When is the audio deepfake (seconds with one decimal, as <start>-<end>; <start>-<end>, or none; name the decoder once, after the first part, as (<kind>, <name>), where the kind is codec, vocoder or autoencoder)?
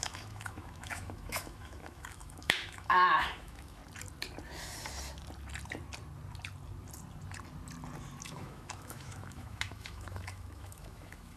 0.0-3.8 (autoencoder, DAC-VAE); 8.2-11.4